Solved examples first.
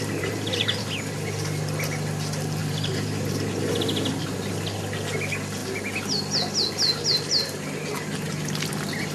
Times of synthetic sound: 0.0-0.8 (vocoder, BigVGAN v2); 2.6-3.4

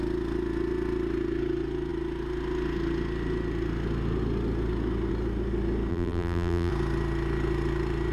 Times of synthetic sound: 5.9-6.7 (vocoder, BigVGAN v2)